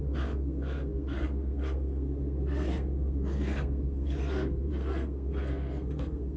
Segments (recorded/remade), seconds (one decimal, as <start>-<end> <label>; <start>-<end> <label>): 0.0-6.4 remade